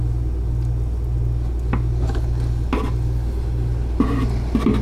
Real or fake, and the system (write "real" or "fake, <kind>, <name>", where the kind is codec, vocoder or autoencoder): real